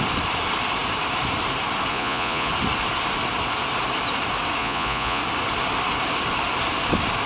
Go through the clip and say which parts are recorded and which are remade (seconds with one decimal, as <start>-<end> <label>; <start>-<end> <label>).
0.0-1.9 recorded; 1.9-2.5 remade; 2.5-4.6 recorded; 4.6-5.2 remade; 5.2-7.3 recorded